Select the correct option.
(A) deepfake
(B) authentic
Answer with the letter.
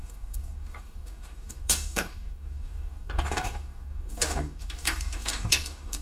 A